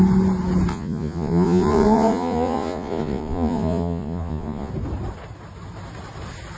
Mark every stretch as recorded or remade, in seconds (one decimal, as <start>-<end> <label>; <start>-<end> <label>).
0.0-0.7 recorded; 0.7-4.7 remade; 4.7-6.6 recorded